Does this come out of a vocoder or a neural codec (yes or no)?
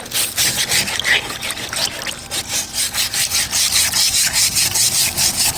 no